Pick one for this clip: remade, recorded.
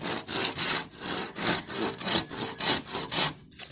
recorded